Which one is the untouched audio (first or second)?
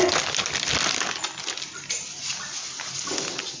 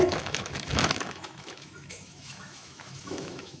first